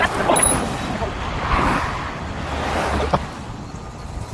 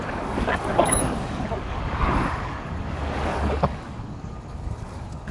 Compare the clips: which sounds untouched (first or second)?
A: first